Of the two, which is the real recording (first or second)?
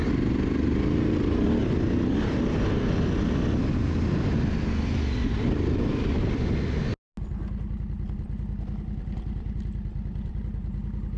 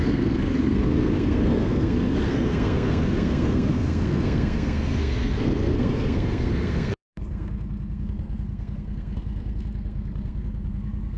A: first